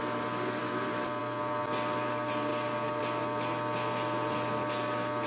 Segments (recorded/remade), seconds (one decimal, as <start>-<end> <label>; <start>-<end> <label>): 0.0-5.3 recorded